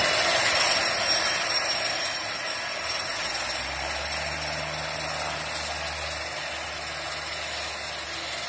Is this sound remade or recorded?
recorded